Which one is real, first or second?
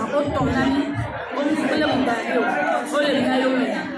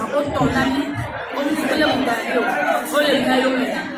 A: first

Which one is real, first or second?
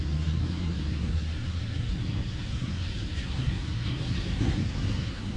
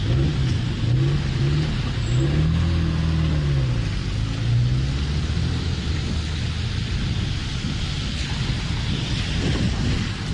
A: second